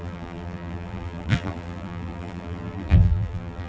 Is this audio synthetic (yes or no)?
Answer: yes